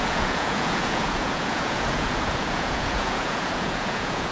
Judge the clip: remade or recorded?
remade